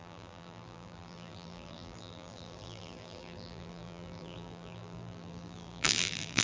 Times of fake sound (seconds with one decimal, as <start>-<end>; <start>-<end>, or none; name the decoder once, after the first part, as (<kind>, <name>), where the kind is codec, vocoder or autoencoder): 0.0-6.4 (vocoder, BigVGAN v2)